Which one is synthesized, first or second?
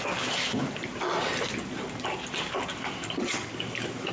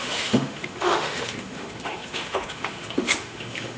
second